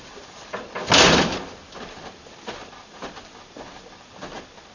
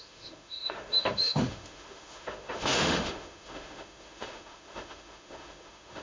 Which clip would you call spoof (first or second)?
second